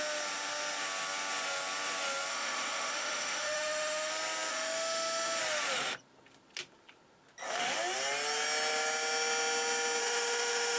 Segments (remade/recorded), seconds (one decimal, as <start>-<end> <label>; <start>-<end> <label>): 0.0-2.3 recorded; 2.3-4.1 remade; 4.1-4.5 recorded; 4.5-5.4 remade; 5.4-10.0 recorded; 10.0-10.8 remade